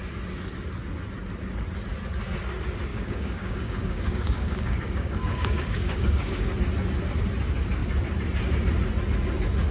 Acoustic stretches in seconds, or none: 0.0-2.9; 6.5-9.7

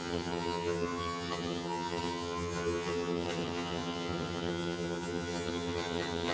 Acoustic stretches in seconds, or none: none

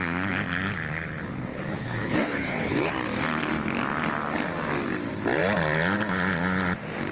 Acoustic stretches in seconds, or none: 0.0-1.5; 2.9-7.1

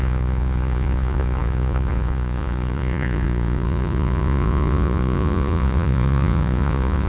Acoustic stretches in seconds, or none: none